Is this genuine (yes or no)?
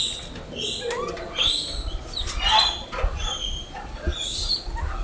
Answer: yes